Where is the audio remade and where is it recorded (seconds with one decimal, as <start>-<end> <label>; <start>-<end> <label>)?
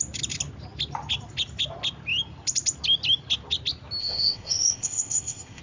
0.0-4.0 recorded; 4.0-5.6 remade